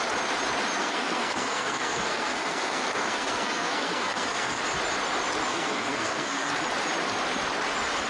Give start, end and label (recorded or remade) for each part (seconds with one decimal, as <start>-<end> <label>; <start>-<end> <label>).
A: 0.0-0.8 recorded; 0.8-4.6 remade; 4.6-5.5 recorded; 5.5-6.5 remade; 6.5-8.1 recorded